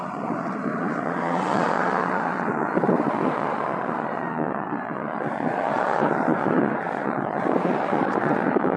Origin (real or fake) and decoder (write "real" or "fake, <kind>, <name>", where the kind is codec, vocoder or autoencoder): fake, vocoder, Vocos